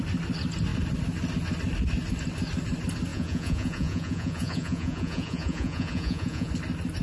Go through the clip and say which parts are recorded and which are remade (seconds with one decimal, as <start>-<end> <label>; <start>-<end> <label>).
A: 0.0-3.1 recorded; 3.1-6.5 remade; 6.5-7.0 recorded